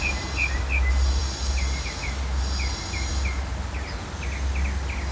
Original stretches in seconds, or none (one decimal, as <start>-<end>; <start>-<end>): 0.0-5.1

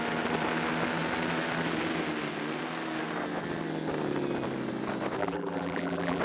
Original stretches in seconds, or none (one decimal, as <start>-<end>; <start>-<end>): 0.0-5.2

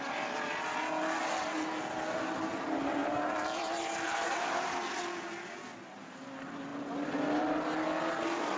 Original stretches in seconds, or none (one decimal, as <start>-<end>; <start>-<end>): 0.0-3.0; 4.7-8.6